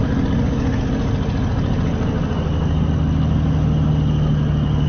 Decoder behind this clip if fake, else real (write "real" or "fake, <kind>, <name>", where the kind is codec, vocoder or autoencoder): real